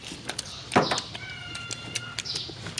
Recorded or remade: recorded